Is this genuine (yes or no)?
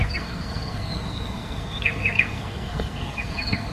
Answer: no